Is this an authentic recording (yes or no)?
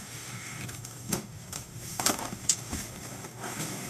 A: no